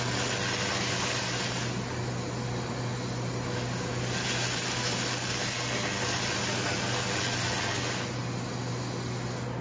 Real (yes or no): yes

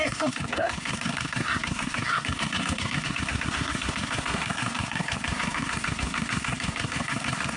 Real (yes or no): no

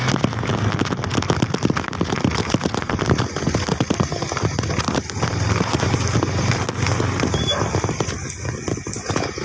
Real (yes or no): yes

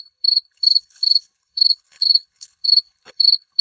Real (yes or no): no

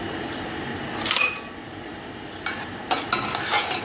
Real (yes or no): yes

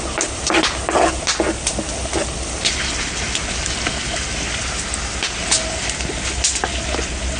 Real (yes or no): yes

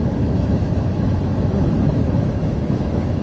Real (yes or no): no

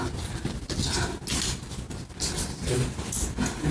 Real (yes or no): yes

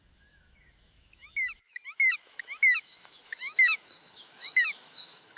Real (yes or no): no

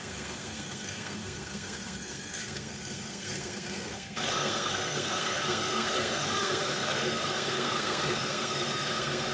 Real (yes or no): no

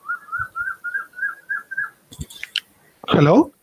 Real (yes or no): yes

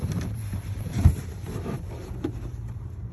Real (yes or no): no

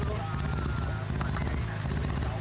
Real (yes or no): yes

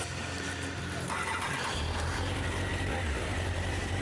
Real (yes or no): yes